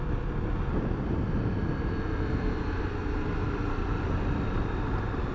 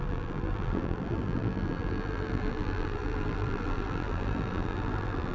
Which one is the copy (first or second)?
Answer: second